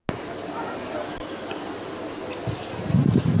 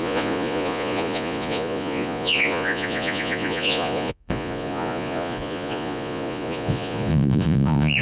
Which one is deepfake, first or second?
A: second